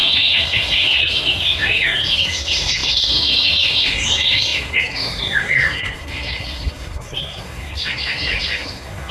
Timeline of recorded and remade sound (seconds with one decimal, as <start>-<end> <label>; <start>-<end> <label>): 0.0-9.1 remade